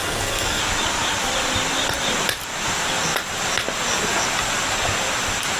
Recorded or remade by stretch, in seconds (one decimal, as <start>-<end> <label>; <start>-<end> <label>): 0.0-0.6 remade; 0.6-5.6 recorded

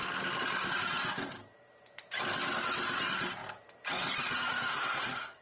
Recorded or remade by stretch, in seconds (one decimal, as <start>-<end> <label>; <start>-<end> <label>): 0.0-4.7 recorded; 4.7-5.4 remade

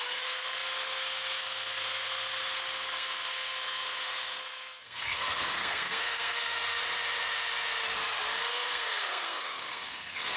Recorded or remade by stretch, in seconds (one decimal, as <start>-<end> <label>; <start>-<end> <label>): 0.0-6.8 remade; 6.8-8.5 recorded; 8.5-10.4 remade

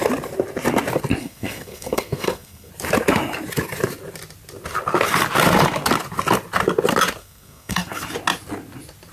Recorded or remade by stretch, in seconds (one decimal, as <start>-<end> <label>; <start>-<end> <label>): 0.0-1.2 recorded; 1.2-2.7 remade; 2.7-7.2 recorded; 7.2-8.0 remade; 8.0-9.1 recorded

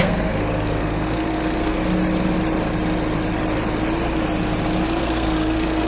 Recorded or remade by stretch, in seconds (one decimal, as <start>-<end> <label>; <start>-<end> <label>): 0.0-1.8 remade; 1.8-5.0 recorded; 5.0-5.9 remade

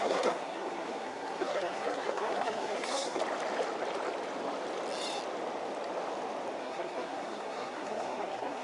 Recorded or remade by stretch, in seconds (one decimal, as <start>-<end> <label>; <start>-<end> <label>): 0.0-3.2 remade; 3.2-6.6 recorded; 6.6-8.6 remade

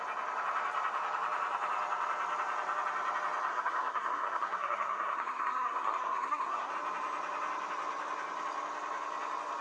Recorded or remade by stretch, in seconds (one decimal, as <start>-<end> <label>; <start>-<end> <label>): 0.0-3.5 recorded; 3.5-6.7 remade; 6.7-9.6 recorded

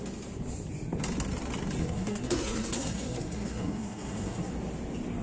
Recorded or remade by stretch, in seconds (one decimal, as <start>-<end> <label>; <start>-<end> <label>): 0.0-1.8 recorded; 1.8-4.5 remade; 4.5-5.2 recorded